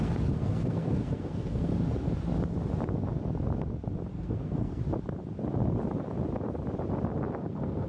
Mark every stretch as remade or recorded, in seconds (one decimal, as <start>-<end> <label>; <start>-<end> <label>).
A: 0.0-1.7 remade; 1.7-4.1 recorded; 4.1-4.8 remade; 4.8-7.4 recorded; 7.4-7.9 remade

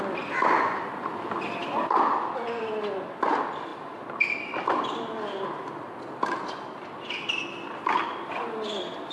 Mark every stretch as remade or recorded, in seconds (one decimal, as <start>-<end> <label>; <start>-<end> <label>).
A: 0.0-9.1 recorded

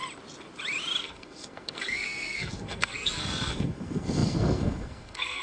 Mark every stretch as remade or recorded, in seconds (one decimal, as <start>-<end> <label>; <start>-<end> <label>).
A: 0.0-1.0 recorded; 1.0-5.4 remade

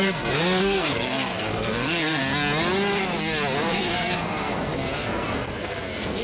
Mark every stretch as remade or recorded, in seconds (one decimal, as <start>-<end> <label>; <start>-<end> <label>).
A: 0.0-2.2 remade; 2.2-3.7 recorded; 3.7-6.2 remade

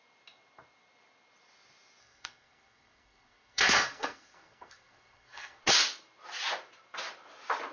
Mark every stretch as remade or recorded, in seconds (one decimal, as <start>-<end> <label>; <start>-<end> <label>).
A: 0.0-2.0 recorded; 2.0-5.6 remade; 5.6-7.7 recorded

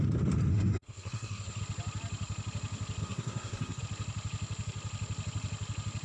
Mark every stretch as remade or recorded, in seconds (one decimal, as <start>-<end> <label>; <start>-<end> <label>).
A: 0.0-0.5 recorded; 0.5-1.6 remade; 1.6-3.0 recorded; 3.0-3.8 remade; 3.8-6.0 recorded